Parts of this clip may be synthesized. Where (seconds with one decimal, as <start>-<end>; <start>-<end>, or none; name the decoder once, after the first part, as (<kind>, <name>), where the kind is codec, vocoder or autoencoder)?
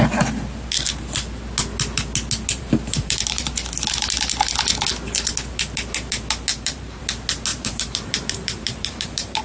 2.5-3.5 (vocoder, BigVGAN v2); 6.5-7.0; 7.5-9.4